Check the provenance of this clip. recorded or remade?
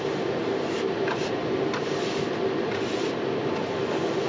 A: recorded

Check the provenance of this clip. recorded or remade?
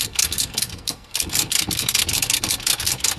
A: remade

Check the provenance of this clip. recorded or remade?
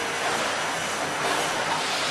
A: recorded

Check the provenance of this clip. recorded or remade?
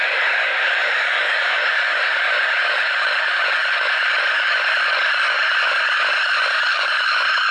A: remade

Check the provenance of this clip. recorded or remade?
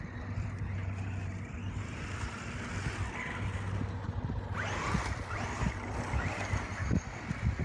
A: recorded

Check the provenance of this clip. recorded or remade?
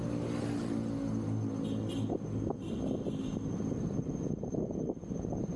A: recorded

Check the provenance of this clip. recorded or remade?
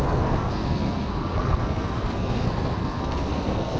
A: remade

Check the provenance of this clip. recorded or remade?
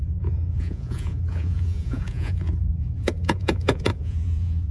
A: remade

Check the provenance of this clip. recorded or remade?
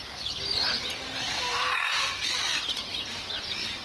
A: recorded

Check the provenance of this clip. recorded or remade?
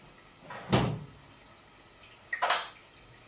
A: recorded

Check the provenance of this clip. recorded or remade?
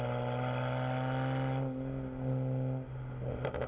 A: recorded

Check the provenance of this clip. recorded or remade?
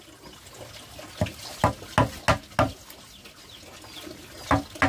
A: recorded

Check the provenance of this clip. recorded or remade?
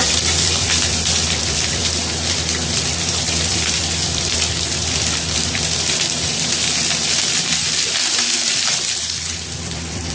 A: remade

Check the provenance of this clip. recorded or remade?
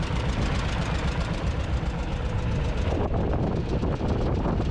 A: recorded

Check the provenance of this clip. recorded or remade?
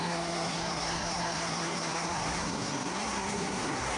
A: remade